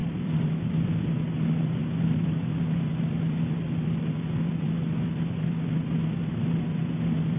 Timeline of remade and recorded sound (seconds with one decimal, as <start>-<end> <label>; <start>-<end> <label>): 0.0-7.4 recorded